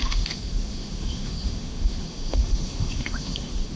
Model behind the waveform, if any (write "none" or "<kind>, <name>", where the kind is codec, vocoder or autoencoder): autoencoder, DAC-VAE